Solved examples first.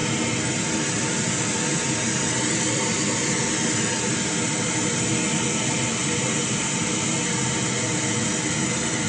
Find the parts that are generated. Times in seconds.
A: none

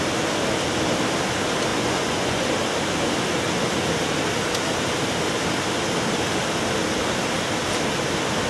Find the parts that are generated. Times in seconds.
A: 1.7-2.5 (vocoder, Vocos)

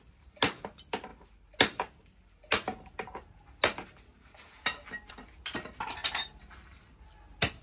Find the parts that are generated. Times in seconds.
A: none

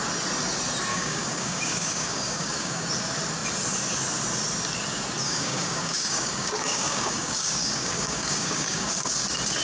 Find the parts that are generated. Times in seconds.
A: 0.9-2.9 (codec, DAC); 5.2-9.1

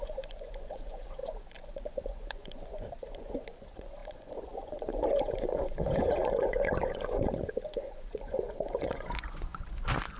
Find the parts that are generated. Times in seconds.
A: 0.0-10.2 (vocoder, Vocos)